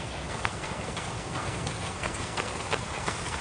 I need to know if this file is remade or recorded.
remade